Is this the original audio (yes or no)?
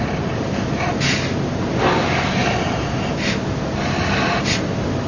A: yes